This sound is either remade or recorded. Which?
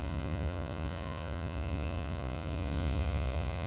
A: remade